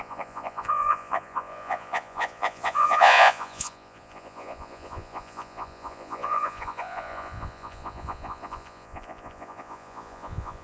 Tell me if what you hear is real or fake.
fake